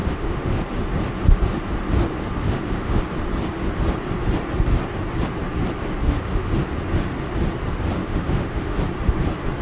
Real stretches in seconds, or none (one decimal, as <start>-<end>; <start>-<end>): 0.6-2.4; 3.0-6.0; 6.5-8.0; 8.8-9.6